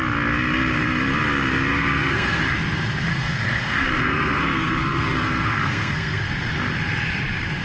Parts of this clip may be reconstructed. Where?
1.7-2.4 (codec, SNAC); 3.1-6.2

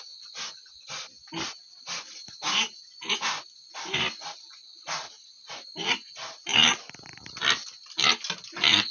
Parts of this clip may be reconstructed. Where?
none

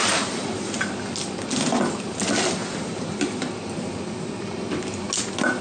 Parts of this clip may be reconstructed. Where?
none